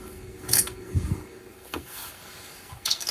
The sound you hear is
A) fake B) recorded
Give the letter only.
A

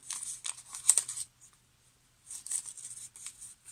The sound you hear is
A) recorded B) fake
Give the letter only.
A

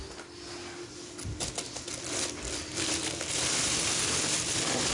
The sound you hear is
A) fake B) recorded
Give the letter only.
B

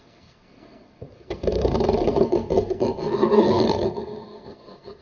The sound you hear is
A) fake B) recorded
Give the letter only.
A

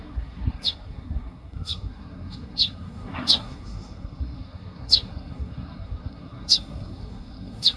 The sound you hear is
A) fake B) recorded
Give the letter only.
A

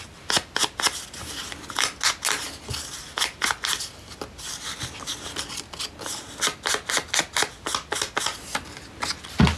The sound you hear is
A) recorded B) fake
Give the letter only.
A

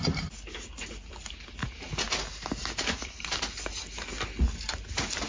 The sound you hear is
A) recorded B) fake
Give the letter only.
A